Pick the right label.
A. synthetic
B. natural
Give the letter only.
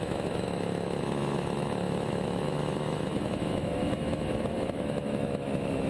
A